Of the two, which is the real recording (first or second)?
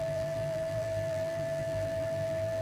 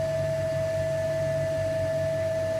second